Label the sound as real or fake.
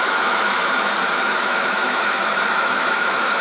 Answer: fake